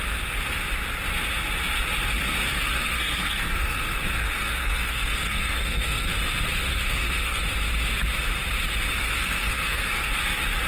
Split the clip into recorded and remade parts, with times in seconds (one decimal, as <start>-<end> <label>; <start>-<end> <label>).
0.0-2.5 recorded; 2.5-6.1 remade; 6.1-6.7 recorded; 6.7-7.4 remade; 7.4-9.0 recorded; 9.0-10.1 remade; 10.1-10.7 recorded

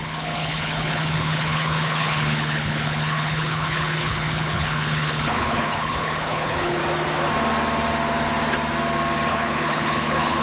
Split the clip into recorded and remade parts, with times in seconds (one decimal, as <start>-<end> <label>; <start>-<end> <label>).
0.0-6.8 remade; 6.8-9.3 recorded; 9.3-10.4 remade

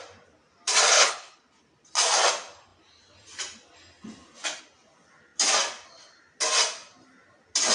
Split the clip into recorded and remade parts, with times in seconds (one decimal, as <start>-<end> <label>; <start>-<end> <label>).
0.0-0.9 recorded; 0.9-1.4 remade; 1.4-7.7 recorded

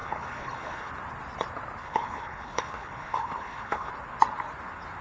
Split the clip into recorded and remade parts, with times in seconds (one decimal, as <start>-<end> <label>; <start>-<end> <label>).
0.0-0.9 remade; 0.9-1.8 recorded; 1.8-3.9 remade; 3.9-5.0 recorded

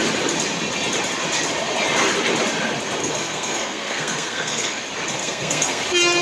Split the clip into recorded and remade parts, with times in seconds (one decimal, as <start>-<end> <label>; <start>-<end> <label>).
0.0-3.0 recorded; 3.0-4.8 remade; 4.8-5.2 recorded; 5.2-5.8 remade; 5.8-6.2 recorded

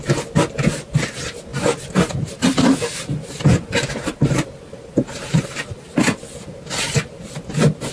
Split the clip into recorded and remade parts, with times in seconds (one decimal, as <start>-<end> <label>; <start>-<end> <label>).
0.0-3.5 recorded; 3.5-5.6 remade; 5.6-7.9 recorded

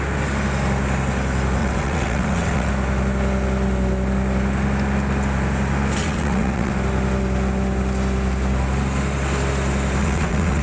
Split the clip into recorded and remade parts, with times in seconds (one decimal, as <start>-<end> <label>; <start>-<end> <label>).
0.0-1.6 recorded; 1.6-2.7 remade; 2.7-6.0 recorded; 6.0-6.7 remade; 6.7-10.0 recorded; 10.0-10.6 remade